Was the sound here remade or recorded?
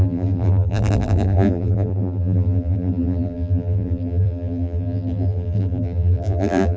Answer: remade